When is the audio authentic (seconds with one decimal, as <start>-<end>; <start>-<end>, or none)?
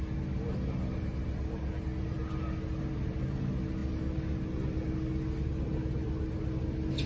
0.0-7.1